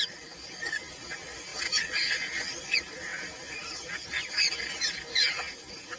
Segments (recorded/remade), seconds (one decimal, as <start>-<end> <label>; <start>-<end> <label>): 0.0-6.0 recorded